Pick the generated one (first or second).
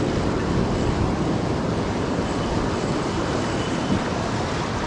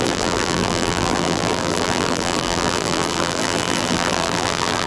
second